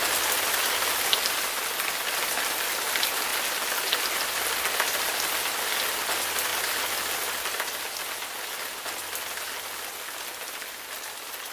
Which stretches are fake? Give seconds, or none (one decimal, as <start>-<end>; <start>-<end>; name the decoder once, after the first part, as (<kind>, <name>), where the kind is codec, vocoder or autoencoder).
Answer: none